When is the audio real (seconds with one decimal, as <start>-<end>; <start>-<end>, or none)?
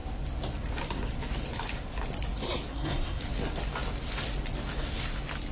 0.0-2.7; 3.2-5.5